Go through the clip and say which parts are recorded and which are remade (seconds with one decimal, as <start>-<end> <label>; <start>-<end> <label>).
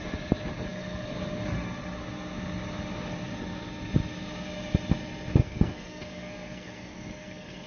0.0-5.4 recorded; 5.4-7.7 remade